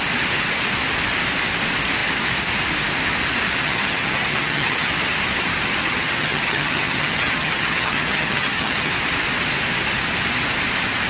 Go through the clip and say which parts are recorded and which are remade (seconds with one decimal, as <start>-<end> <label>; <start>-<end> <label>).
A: 0.0-3.6 recorded; 3.6-4.9 remade; 4.9-5.8 recorded; 5.8-8.9 remade; 8.9-11.1 recorded